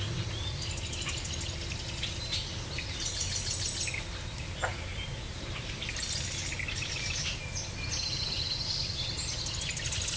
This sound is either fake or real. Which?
real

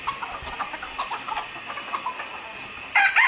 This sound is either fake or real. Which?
real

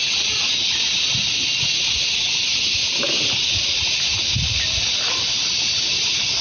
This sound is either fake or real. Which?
real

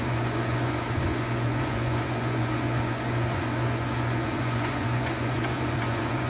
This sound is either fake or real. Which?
fake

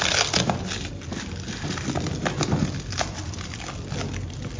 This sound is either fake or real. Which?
real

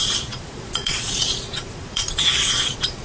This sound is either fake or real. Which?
fake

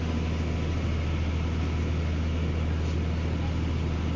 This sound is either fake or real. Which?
real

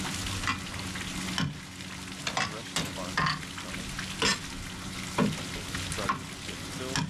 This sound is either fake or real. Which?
real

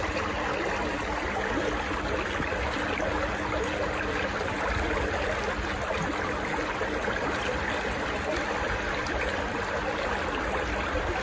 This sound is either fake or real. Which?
real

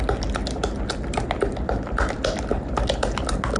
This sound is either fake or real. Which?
real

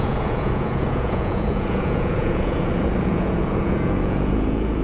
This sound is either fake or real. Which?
fake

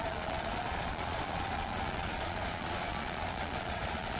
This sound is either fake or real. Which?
fake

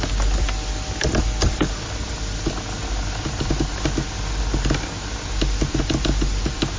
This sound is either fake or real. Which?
real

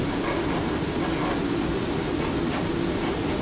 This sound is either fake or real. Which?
real